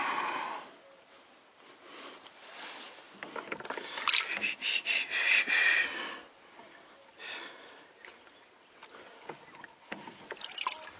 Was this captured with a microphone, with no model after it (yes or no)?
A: yes